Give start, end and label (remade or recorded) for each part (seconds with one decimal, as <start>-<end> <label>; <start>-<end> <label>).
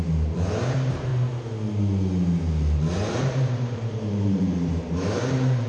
0.0-1.1 remade; 1.1-3.2 recorded; 3.2-5.7 remade